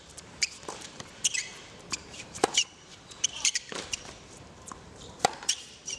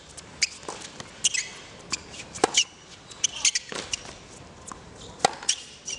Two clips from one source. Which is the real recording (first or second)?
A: second